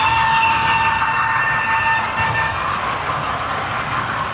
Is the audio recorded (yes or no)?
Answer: yes